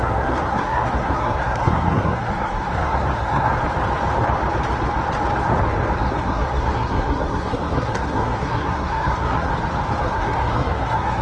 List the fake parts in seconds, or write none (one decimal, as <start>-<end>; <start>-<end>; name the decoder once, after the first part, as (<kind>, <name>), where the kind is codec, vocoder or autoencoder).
0.0-3.5 (codec, SNAC); 6.2-9.5; 10.0-11.2